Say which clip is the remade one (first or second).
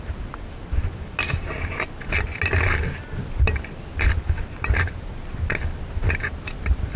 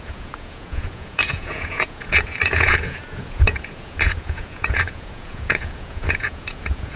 second